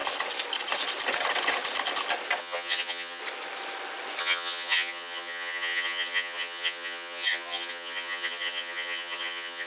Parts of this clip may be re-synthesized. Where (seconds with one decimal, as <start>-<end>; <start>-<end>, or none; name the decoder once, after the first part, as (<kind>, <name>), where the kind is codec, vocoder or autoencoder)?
2.4-3.2 (vocoder, HiFi-GAN); 4.2-9.7